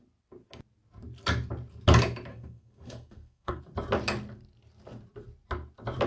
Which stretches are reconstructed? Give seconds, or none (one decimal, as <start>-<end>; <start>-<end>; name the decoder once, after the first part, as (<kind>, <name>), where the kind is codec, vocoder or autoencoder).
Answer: 2.3-3.6 (codec, SNAC)